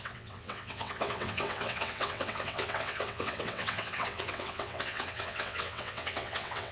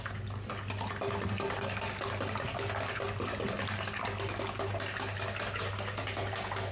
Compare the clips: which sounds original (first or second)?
second